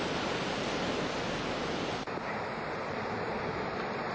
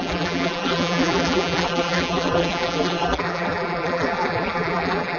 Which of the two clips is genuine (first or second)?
first